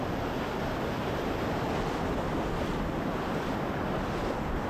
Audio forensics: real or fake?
real